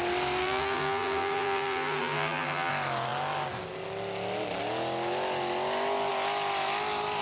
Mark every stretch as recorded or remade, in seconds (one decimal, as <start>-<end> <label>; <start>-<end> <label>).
0.0-0.4 recorded; 0.4-2.7 remade; 2.7-7.2 recorded